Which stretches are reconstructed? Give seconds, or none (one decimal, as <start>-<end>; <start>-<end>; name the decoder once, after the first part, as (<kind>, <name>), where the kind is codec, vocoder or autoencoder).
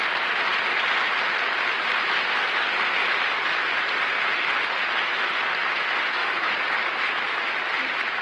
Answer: none